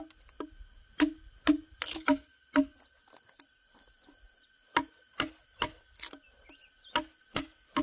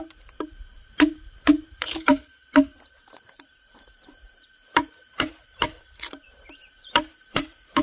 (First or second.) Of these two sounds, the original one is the first